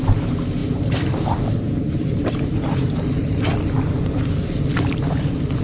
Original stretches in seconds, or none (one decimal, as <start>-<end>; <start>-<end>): 0.0-5.6